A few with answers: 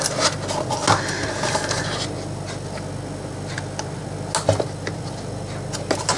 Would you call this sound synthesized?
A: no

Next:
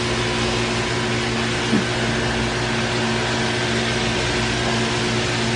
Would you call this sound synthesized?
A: no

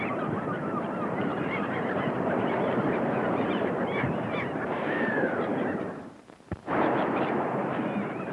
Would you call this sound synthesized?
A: yes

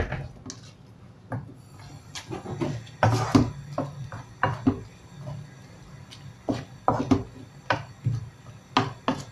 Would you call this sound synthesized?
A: no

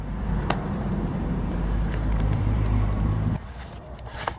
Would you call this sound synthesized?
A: yes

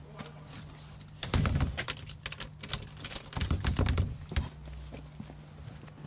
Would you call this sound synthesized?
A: no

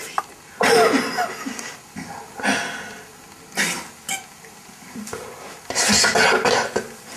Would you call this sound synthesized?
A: no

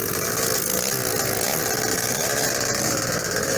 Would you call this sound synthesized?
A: no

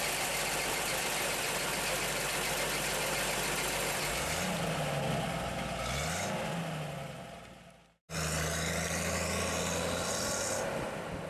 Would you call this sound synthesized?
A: no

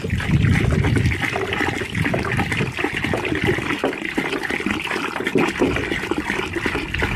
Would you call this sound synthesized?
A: no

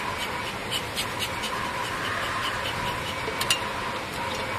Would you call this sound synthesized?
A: no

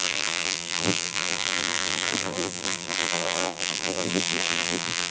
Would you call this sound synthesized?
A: yes